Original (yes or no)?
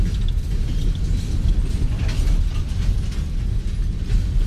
yes